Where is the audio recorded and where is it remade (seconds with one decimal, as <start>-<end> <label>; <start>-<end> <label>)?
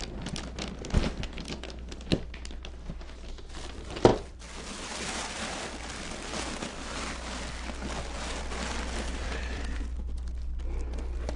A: 0.0-4.1 recorded; 4.1-5.7 remade; 5.7-9.1 recorded; 9.1-9.8 remade; 9.8-11.4 recorded